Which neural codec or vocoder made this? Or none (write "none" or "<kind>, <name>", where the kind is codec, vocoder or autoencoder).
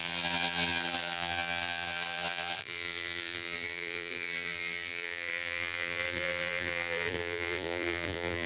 vocoder, BigVGAN v2